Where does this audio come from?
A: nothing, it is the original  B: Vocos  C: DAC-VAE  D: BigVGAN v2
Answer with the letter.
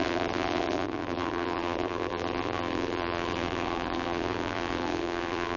D